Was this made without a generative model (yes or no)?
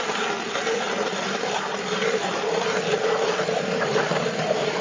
yes